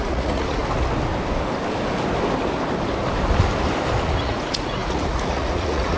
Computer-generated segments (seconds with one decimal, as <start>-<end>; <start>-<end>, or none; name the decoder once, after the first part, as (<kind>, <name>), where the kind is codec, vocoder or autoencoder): 0.0-0.6 (vocoder, Vocos); 4.2-6.0